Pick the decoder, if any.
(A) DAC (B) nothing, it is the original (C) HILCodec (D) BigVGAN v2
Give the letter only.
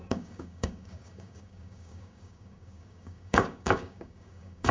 A